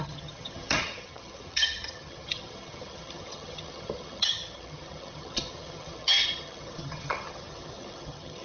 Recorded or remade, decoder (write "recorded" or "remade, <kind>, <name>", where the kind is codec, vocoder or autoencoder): remade, vocoder, HiFi-GAN